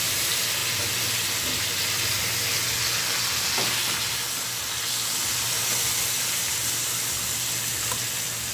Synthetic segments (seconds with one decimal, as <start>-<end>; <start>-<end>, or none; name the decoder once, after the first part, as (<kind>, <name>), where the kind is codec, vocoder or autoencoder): none